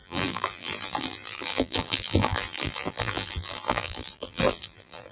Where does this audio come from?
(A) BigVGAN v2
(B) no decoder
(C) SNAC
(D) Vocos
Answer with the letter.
A